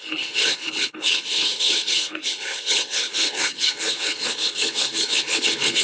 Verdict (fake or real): fake